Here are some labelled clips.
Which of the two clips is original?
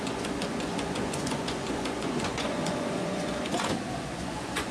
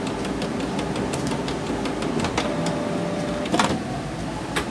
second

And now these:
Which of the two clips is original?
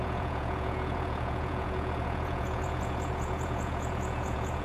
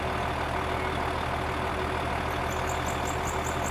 second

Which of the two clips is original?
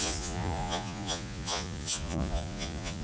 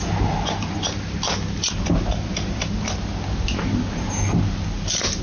second